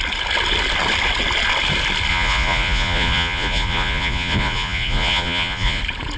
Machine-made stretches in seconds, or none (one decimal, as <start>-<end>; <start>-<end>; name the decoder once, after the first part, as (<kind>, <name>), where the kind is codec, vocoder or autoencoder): 2.1-5.8 (vocoder, Vocos)

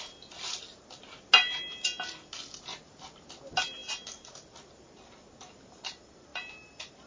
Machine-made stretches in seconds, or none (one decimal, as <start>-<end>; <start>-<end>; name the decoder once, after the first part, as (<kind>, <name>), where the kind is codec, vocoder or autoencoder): none

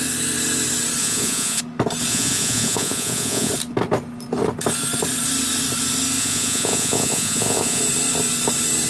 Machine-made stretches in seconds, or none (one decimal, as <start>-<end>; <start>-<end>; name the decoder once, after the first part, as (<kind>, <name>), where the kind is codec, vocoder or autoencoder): 1.0-1.6 (vocoder, Vocos); 2.1-3.5; 6.2-7.8

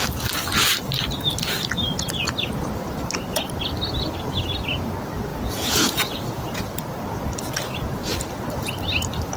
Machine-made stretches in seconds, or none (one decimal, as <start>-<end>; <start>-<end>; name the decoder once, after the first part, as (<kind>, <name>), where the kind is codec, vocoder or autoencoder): 5.3-6.6 (vocoder, Vocos)

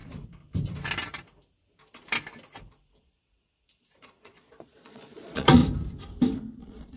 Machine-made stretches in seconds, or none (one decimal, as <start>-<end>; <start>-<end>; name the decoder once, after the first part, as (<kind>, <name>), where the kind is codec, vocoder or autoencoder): 3.0-5.6 (vocoder, Vocos); 6.6-7.0

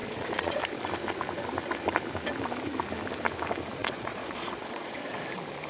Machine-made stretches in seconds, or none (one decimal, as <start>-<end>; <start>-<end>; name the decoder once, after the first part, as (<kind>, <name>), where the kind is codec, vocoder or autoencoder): 0.0-0.6 (vocoder, Vocos); 3.8-5.2

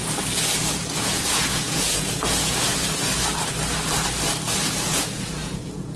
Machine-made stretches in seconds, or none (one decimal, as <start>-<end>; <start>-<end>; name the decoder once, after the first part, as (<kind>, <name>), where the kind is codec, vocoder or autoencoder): 1.0-2.7 (vocoder, Vocos); 4.7-6.0